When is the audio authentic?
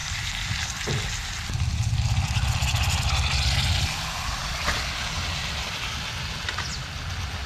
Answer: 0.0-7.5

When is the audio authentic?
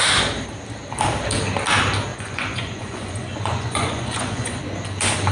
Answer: 0.0-2.1; 4.6-5.3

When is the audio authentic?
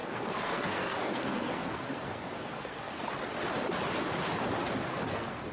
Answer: 3.1-4.8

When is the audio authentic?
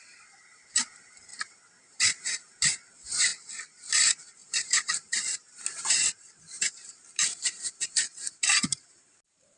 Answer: 3.3-3.9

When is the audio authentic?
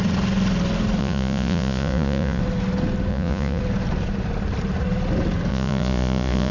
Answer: 0.0-1.0; 2.4-3.1; 3.6-5.5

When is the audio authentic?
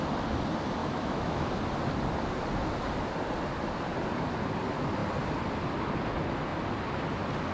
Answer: 0.0-0.8; 1.5-7.5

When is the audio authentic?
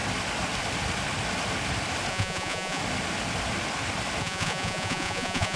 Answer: 0.0-2.1; 2.8-4.2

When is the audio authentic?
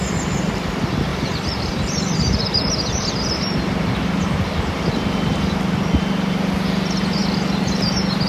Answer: 0.0-1.1; 3.1-8.3